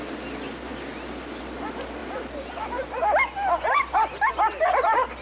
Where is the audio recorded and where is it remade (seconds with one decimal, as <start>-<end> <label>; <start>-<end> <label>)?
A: 0.0-5.2 recorded